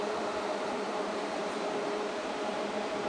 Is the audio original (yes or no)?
no